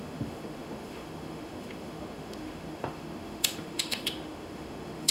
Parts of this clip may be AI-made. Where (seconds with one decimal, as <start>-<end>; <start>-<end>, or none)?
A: 0.0-5.1